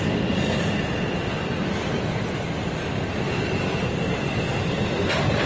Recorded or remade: recorded